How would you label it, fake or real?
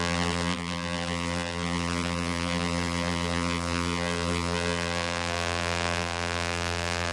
fake